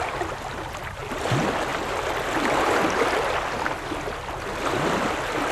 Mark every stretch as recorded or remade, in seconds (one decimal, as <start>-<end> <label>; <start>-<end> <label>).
0.0-5.5 recorded